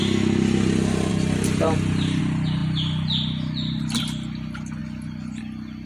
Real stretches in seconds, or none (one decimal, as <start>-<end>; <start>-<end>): 0.0-1.1; 2.2-4.8; 5.4-5.9